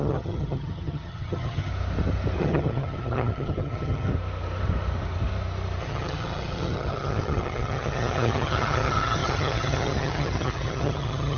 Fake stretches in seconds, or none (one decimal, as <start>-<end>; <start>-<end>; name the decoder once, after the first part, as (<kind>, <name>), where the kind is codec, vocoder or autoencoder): 0.0-1.7 (vocoder, HiFi-GAN); 2.4-4.1; 5.8-11.4